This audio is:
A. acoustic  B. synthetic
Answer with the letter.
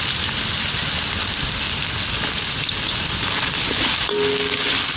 A